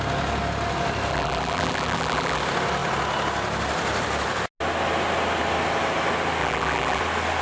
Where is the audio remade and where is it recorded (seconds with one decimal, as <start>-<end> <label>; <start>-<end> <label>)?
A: 0.0-1.1 recorded; 1.1-2.4 remade; 2.4-6.4 recorded; 6.4-7.0 remade; 7.0-7.4 recorded

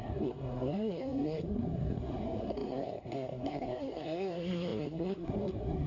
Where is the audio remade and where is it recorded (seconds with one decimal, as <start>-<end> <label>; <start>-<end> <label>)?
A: 0.0-5.9 remade

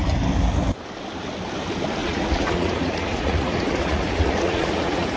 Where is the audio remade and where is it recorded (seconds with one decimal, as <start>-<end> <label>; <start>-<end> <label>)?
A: 0.0-2.0 recorded; 2.0-5.2 remade

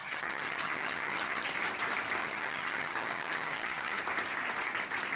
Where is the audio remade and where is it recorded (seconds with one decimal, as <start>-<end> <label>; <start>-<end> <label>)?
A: 0.0-1.4 remade; 1.4-2.2 recorded; 2.2-4.0 remade; 4.0-5.2 recorded

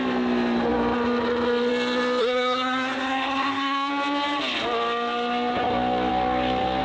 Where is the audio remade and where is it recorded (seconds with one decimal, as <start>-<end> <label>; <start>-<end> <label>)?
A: 0.0-2.2 recorded; 2.2-3.9 remade; 3.9-6.8 recorded

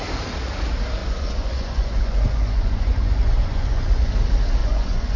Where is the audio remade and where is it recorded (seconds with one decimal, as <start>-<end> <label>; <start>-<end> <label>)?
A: 0.0-1.0 recorded; 1.0-4.1 remade; 4.1-4.6 recorded; 4.6-5.2 remade